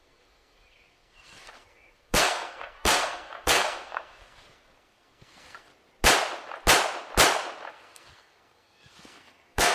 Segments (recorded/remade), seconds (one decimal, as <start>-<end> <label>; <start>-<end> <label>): 0.0-5.7 remade; 5.7-7.7 recorded; 7.7-9.7 remade